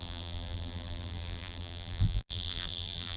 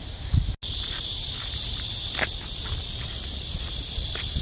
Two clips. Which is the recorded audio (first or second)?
second